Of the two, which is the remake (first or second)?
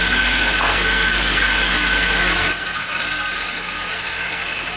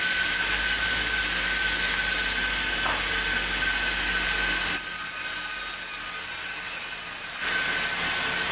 first